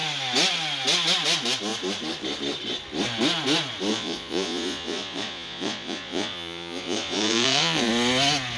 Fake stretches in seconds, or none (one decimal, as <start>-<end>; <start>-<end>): 3.9-7.9